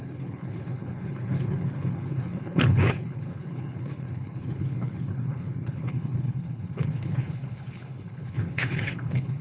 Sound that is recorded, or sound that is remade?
remade